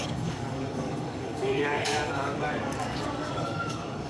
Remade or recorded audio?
remade